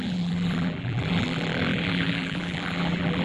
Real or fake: fake